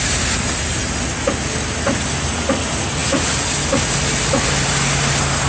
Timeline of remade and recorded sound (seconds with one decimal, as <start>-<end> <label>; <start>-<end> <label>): 0.0-5.5 recorded